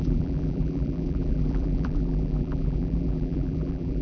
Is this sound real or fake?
fake